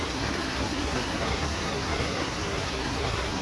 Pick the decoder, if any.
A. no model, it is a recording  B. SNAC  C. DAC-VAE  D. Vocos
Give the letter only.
B